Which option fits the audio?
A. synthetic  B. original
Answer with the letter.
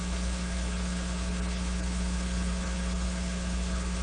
A